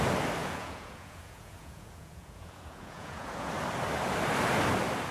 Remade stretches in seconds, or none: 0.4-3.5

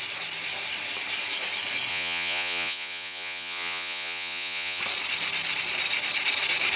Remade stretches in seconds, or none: 1.9-4.8

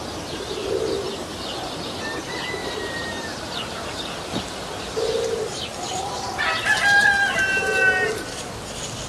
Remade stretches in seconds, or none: none

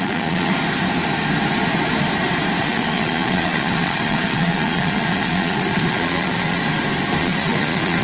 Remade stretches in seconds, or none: 0.0-0.5; 2.6-6.6; 7.2-8.0